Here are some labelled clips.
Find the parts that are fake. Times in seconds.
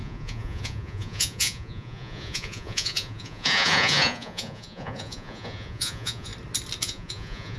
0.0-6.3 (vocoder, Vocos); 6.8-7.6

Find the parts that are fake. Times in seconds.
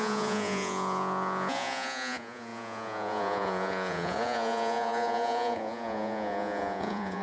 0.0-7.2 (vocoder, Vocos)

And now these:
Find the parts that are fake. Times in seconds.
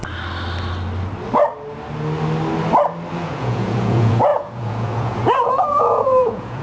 3.1-6.6 (vocoder, Vocos)